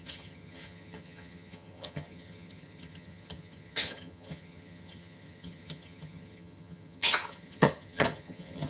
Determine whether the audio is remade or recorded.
remade